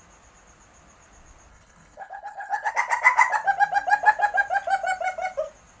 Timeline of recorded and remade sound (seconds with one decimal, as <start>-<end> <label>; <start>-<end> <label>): 0.0-1.5 recorded; 1.5-2.7 remade; 2.7-5.8 recorded